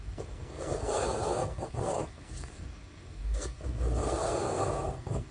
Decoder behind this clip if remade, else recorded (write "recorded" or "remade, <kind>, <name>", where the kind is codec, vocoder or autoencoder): remade, codec, SNAC